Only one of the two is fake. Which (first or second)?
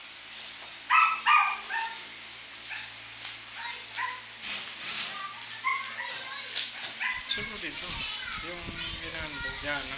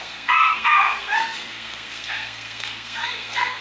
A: second